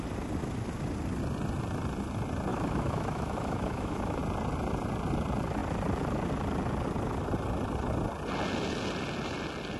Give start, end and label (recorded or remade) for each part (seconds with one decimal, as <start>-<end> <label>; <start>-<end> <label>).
0.0-2.5 recorded; 2.5-4.2 remade; 4.2-9.8 recorded

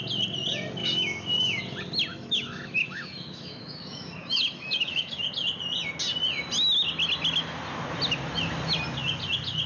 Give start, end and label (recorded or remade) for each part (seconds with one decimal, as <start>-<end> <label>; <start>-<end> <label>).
0.0-0.8 recorded; 0.8-1.6 remade; 1.6-2.1 recorded; 2.1-5.3 remade; 5.3-9.7 recorded

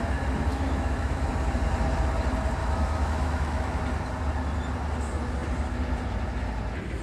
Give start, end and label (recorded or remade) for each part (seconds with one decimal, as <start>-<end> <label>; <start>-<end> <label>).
0.0-0.5 recorded; 0.5-1.3 remade; 1.3-2.6 recorded; 2.6-3.8 remade; 3.8-7.0 recorded